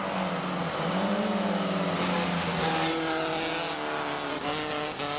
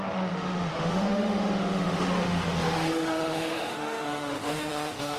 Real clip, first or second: first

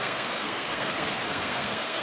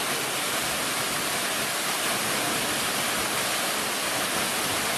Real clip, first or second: second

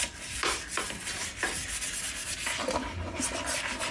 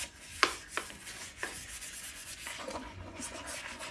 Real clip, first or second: first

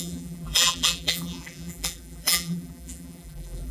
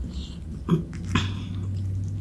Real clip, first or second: second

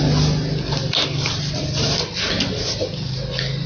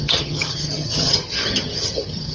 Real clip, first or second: first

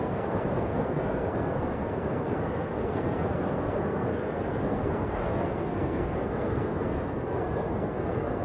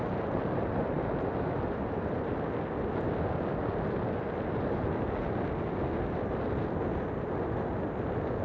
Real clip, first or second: second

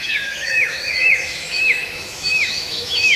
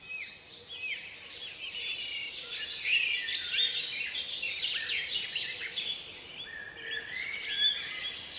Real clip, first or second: second